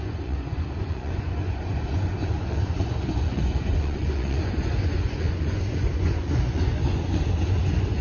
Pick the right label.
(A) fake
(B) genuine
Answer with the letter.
A